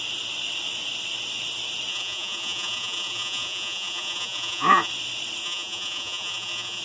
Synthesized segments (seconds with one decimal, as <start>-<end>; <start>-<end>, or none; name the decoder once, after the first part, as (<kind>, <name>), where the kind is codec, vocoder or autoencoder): 1.9-4.9 (vocoder, Vocos); 5.4-6.8